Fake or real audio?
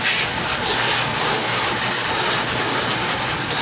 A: real